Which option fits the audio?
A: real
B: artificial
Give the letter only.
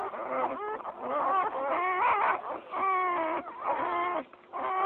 A